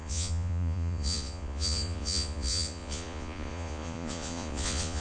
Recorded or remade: remade